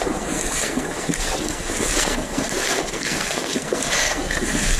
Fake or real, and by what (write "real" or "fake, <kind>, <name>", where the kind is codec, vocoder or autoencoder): fake, codec, SNAC